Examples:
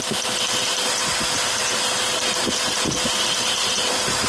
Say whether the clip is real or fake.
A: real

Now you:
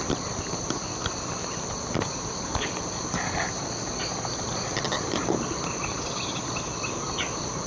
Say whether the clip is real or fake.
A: real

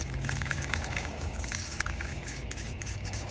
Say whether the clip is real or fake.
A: fake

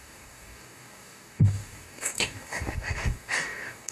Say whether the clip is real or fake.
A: fake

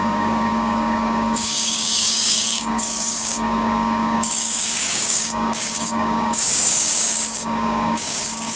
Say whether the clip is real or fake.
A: fake